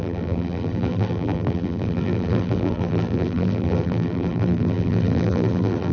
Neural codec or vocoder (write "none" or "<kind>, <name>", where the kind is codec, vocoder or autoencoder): vocoder, BigVGAN v2